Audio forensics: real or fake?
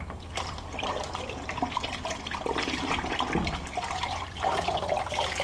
real